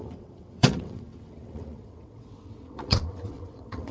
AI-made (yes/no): yes